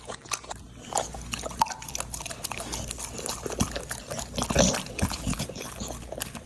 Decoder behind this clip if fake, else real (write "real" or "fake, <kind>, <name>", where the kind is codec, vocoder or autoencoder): real